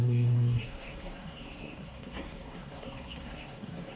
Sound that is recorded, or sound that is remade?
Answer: remade